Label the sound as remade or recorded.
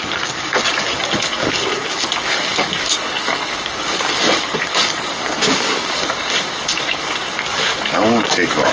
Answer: remade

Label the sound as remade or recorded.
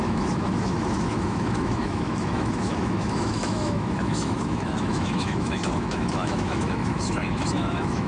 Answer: remade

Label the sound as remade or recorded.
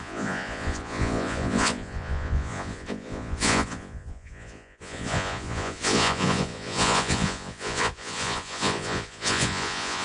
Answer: remade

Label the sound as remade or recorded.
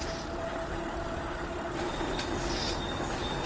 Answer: recorded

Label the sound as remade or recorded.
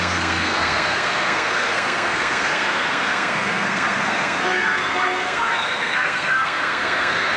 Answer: remade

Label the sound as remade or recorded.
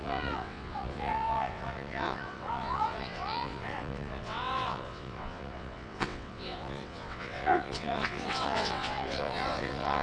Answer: remade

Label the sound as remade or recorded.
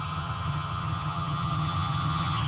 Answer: remade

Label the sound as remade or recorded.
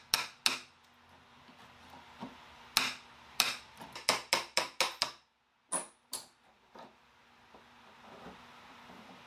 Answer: recorded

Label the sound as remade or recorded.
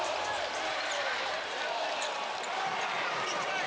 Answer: remade